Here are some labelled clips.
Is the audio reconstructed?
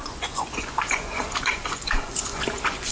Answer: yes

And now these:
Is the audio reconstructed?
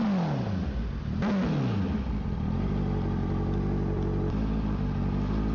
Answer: no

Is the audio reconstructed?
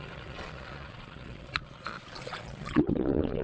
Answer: yes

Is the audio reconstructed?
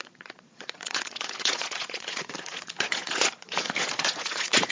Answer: yes